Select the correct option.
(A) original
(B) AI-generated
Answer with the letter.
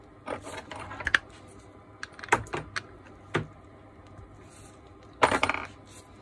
A